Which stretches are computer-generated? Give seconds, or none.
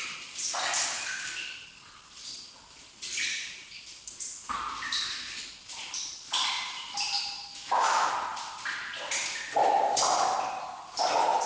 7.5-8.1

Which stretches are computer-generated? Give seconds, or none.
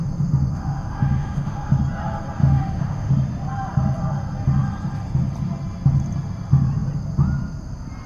0.5-1.8; 2.4-3.1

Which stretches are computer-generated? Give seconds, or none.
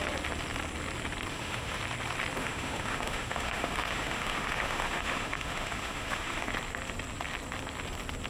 1.3-1.8; 2.4-6.5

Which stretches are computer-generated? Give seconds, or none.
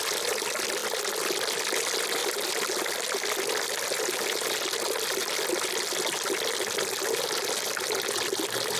none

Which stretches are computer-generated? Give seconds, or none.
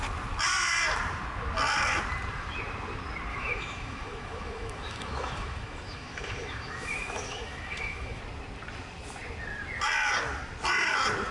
3.3-8.2